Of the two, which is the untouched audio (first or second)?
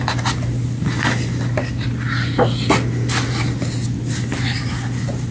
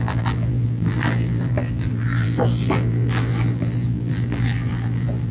first